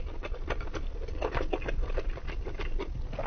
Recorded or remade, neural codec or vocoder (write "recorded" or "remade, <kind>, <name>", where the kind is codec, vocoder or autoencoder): recorded